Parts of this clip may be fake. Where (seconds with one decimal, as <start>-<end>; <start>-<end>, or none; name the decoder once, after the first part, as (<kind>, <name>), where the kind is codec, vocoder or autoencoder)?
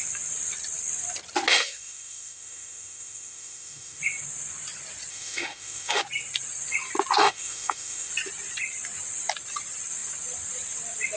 1.5-4.0 (autoencoder, DAC-VAE); 5.1-6.0; 7.2-8.1